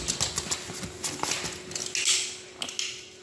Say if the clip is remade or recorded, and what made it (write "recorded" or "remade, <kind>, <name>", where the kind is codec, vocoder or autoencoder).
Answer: recorded